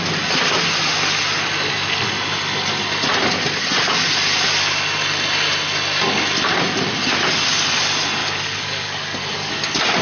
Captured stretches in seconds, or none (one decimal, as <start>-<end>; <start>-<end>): 0.0-8.2; 9.5-10.0